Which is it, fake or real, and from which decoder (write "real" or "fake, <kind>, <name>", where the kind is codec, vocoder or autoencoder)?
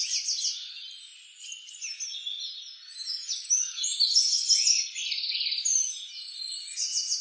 real